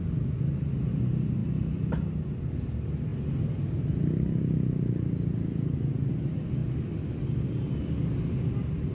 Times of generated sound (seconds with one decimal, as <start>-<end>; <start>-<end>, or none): none

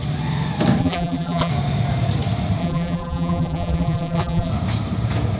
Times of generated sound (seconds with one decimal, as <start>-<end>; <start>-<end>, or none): 0.8-1.5; 2.6-4.5

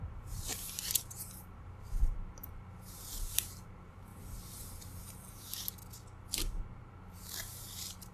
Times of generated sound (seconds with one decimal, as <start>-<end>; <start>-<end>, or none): 0.0-4.1; 5.0-5.8; 6.8-8.1

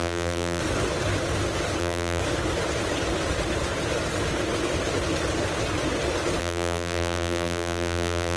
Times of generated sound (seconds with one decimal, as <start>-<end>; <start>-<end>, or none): 0.0-0.6; 1.8-2.2; 6.4-8.4

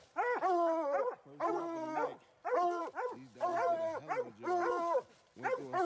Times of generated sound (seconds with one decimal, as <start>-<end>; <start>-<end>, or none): none

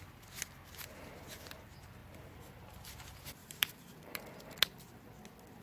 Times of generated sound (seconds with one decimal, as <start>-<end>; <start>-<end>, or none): 3.4-4.2